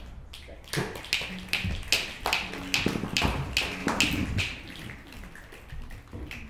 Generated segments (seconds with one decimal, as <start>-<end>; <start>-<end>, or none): none

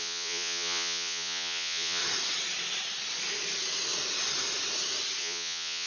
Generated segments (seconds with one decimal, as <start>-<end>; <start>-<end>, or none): 0.0-2.0; 5.2-5.9

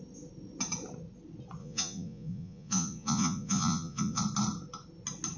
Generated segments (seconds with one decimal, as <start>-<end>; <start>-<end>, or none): 1.6-4.2

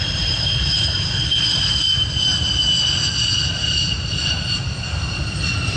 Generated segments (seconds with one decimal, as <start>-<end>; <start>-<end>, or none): none

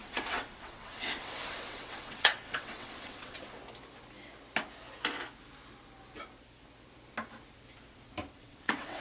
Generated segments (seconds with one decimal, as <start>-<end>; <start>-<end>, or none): 0.0-3.6; 8.3-9.0

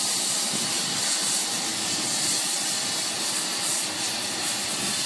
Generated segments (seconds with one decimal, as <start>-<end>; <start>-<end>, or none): none

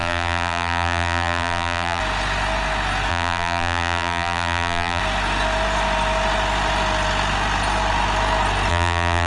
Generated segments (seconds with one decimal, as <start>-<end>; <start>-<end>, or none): 0.0-2.0; 3.1-5.0; 8.7-9.3